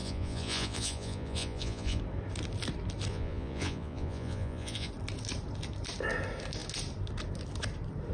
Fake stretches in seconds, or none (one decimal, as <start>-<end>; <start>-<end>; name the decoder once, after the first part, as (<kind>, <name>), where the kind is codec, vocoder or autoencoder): 0.0-2.0 (vocoder, Vocos); 3.1-4.9